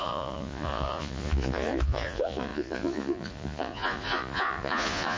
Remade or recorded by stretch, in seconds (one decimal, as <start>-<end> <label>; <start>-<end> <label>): 0.0-5.2 remade